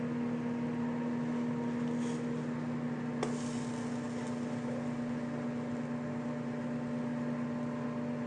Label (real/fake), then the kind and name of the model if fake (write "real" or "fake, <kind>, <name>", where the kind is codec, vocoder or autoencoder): real